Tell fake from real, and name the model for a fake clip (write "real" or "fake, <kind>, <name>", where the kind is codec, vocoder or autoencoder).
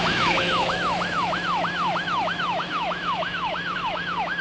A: fake, autoencoder, DAC-VAE